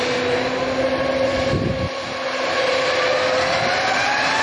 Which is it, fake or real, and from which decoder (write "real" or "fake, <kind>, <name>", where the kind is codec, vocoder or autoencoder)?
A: real